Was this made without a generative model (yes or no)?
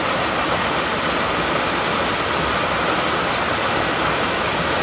yes